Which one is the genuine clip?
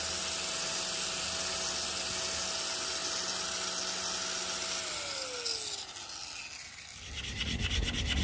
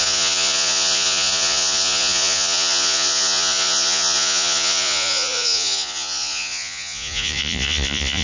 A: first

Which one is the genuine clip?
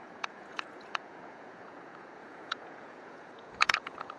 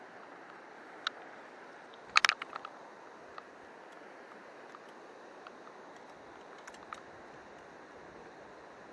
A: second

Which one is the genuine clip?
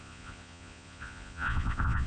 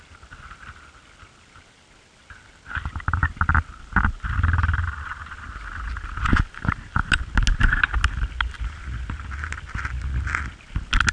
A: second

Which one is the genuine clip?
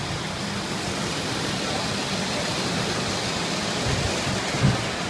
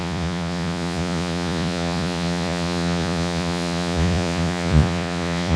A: first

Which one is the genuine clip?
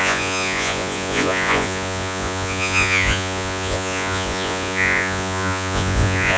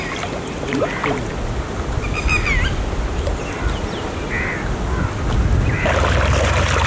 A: second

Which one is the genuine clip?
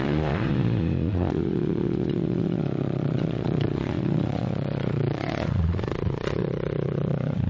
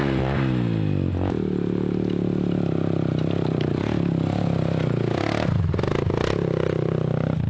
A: second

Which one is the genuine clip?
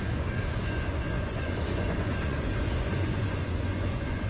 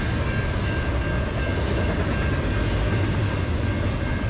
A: second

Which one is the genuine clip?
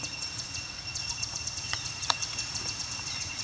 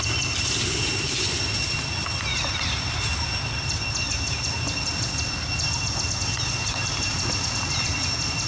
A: second